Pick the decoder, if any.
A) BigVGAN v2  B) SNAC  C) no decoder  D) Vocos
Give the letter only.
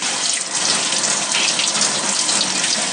C